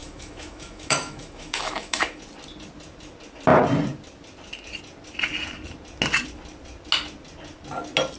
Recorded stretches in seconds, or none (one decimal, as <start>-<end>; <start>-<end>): 2.2-8.2